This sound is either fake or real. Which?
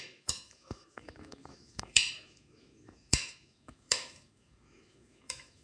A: fake